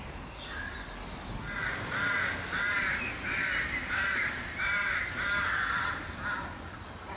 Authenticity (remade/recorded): recorded